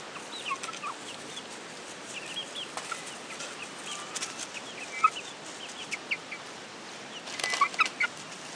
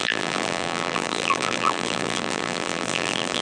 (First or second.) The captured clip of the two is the first